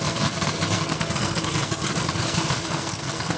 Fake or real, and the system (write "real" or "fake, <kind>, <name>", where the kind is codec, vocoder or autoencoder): fake, codec, SNAC